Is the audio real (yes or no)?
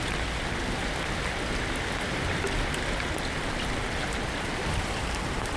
yes